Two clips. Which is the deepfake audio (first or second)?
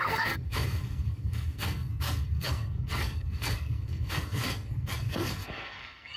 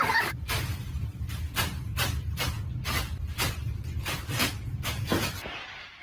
first